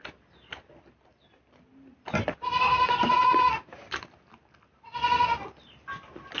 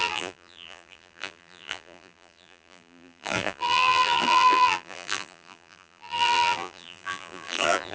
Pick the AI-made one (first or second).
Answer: second